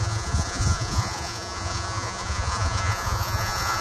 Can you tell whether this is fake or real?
fake